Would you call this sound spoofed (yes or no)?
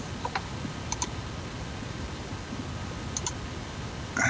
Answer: no